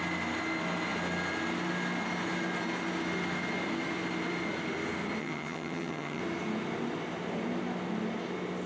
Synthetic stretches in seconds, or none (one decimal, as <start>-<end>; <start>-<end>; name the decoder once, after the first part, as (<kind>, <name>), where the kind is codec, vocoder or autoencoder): 5.2-6.2 (vocoder, HiFi-GAN)